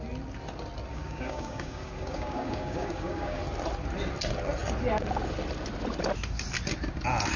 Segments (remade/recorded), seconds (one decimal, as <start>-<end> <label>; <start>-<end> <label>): 0.0-0.9 recorded; 0.9-3.4 remade; 3.4-7.4 recorded